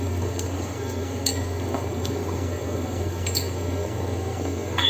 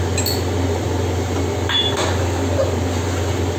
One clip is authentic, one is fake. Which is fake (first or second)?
first